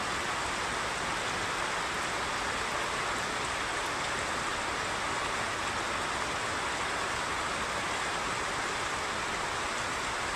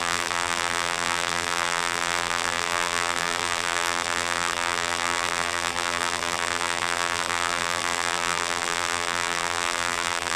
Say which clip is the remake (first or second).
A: second